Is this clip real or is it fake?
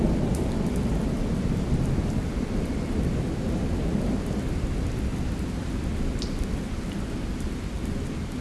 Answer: real